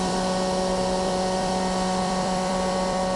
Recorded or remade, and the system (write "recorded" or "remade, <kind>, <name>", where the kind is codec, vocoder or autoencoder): remade, vocoder, BigVGAN v2